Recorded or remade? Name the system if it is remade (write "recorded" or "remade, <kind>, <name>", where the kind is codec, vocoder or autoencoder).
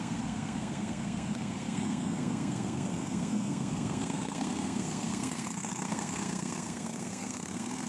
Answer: remade, codec, SNAC